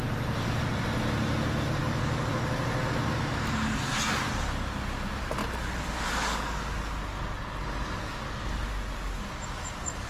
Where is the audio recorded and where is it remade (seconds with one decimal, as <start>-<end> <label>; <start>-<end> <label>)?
0.0-1.8 recorded; 1.8-2.3 remade; 2.3-5.4 recorded; 5.4-6.9 remade; 6.9-10.1 recorded